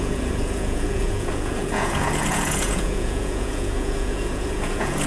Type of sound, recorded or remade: remade